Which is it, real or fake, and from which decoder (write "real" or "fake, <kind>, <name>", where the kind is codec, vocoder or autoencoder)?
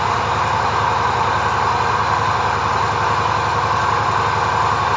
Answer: real